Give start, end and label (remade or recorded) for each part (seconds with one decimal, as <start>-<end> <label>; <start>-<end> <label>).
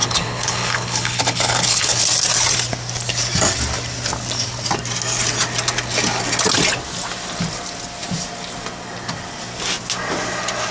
0.0-2.0 remade; 2.0-10.7 recorded